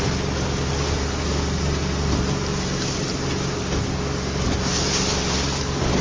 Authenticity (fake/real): real